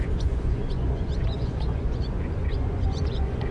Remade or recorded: remade